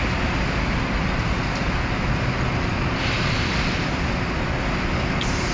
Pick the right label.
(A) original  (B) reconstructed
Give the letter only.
A